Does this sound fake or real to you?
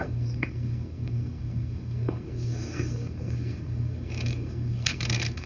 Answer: fake